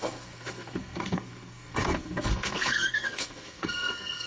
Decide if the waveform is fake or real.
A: fake